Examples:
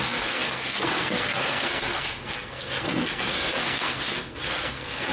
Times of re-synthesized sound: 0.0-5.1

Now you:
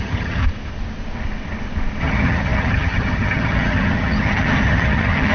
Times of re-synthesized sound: 0.0-0.4; 2.0-5.3

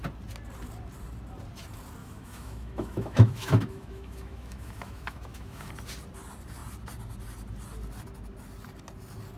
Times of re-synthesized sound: 2.0-5.7

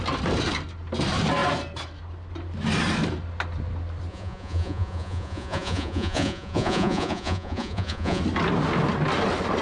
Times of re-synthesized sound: 4.1-8.2

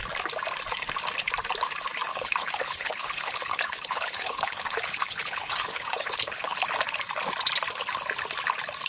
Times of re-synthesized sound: 2.1-6.6

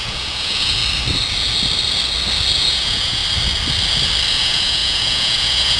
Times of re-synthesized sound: 0.0-0.8; 2.6-3.2; 4.3-5.8

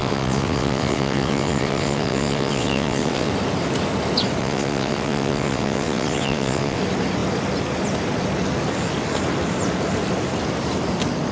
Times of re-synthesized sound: 0.0-3.3; 4.4-6.8